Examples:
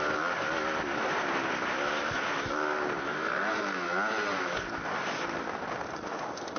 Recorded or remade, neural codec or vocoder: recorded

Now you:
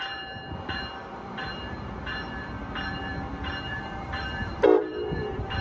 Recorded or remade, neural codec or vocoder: remade, vocoder, BigVGAN v2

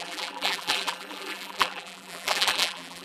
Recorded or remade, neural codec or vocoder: remade, vocoder, BigVGAN v2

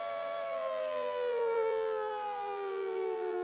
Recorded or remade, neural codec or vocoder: remade, vocoder, BigVGAN v2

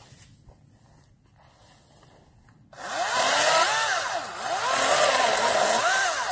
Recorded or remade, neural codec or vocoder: recorded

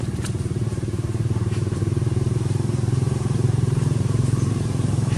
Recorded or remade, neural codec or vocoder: remade, vocoder, BigVGAN v2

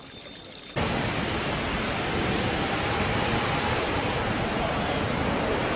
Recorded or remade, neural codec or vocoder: remade, vocoder, BigVGAN v2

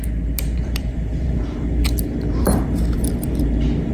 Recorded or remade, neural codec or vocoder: remade, vocoder, BigVGAN v2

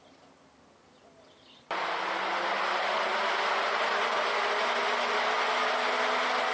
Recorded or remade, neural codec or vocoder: recorded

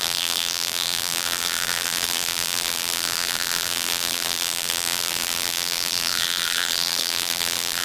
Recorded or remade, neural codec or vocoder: remade, vocoder, BigVGAN v2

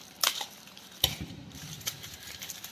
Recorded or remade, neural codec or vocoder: remade, vocoder, BigVGAN v2